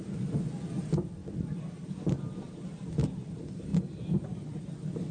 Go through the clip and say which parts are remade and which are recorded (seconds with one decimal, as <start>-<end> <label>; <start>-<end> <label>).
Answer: 0.0-1.2 recorded; 1.2-2.2 remade; 2.2-5.1 recorded